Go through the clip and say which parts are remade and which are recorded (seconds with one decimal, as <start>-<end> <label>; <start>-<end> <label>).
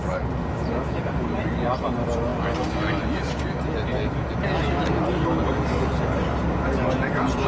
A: 0.0-7.5 recorded